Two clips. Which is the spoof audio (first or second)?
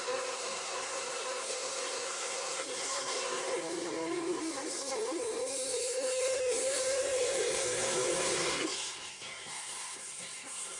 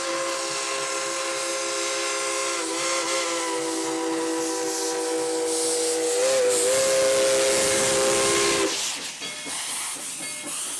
first